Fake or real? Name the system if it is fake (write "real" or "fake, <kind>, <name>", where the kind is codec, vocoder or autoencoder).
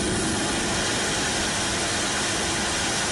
real